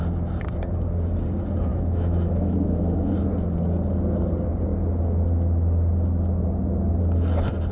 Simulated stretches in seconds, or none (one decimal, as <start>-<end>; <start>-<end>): 1.7-3.1